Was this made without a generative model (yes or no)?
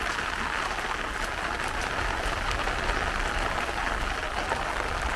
yes